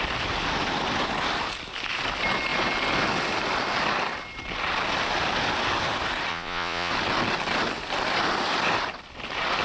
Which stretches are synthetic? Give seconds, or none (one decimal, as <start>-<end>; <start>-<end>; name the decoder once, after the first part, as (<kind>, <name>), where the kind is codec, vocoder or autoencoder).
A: 6.3-6.9 (vocoder, Vocos)